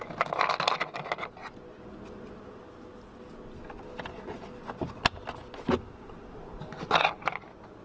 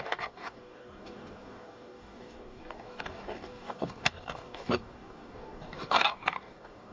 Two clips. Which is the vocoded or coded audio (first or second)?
second